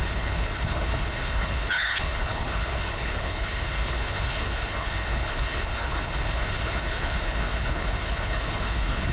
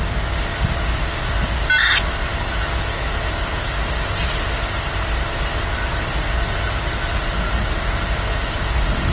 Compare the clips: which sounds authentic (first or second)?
second